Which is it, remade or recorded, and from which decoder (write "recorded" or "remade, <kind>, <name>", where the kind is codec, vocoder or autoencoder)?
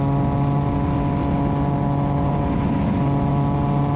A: recorded